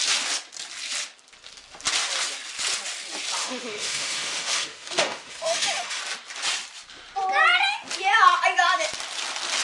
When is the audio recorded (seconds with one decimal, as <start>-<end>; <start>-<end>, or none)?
0.0-3.4; 6.0-9.6